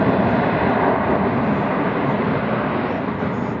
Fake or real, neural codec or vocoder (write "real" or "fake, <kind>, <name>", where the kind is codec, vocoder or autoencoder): real